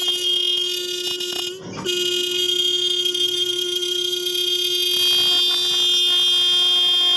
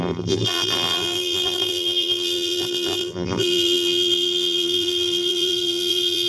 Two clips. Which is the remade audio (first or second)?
second